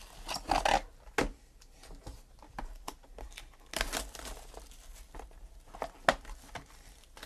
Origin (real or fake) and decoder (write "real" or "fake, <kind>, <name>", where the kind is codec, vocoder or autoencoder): real